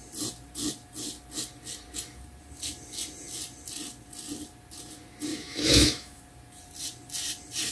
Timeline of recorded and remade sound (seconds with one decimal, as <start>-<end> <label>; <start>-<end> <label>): 0.0-5.3 recorded; 5.3-6.2 remade; 6.2-7.7 recorded